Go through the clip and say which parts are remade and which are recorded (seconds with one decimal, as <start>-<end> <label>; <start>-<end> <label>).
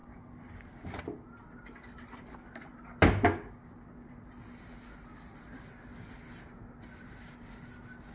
0.0-8.1 recorded